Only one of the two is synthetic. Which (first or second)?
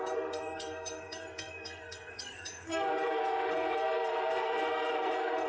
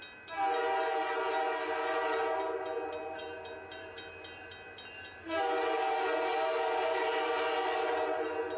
first